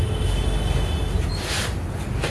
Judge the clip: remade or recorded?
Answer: recorded